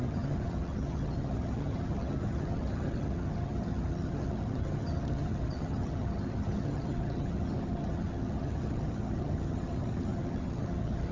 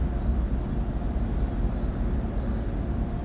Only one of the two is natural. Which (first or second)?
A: second